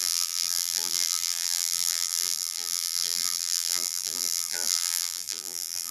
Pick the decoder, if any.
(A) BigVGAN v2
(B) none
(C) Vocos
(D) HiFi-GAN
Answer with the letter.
A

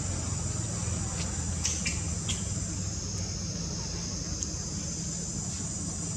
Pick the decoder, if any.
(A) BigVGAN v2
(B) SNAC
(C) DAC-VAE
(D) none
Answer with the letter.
D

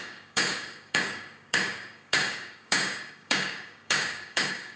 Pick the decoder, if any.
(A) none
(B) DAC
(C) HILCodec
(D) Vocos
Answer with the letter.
B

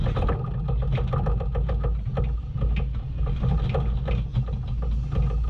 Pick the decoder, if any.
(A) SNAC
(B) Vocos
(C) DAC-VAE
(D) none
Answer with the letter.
D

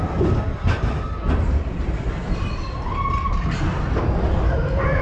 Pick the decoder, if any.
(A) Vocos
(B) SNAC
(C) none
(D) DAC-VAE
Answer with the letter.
C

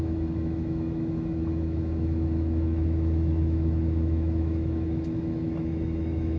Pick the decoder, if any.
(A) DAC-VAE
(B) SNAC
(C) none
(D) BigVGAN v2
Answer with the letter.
A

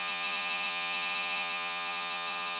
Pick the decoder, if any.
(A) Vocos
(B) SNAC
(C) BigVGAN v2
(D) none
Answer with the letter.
A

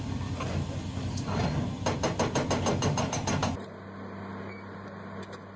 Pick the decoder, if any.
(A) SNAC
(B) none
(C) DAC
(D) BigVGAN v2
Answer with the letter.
B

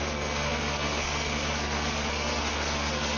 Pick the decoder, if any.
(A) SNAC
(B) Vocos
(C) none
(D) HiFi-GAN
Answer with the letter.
A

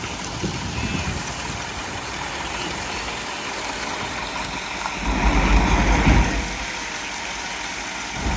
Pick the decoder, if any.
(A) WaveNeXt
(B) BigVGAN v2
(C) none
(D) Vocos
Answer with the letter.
C